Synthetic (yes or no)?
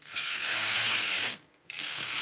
yes